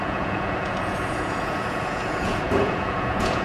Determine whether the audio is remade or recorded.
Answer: remade